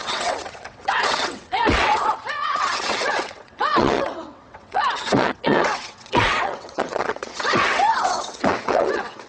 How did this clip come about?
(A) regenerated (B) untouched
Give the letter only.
A